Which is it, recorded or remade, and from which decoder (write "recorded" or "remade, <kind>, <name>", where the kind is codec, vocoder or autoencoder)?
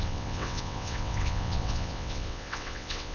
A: remade, vocoder, WaveNeXt